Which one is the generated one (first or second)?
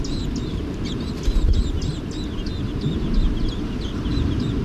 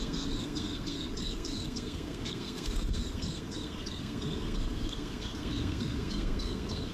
second